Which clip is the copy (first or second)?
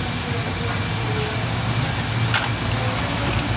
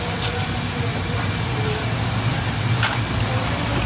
second